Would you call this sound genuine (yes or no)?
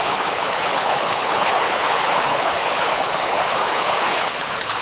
no